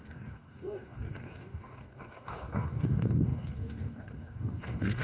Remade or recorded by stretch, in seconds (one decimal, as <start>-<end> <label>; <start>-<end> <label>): 0.0-5.0 remade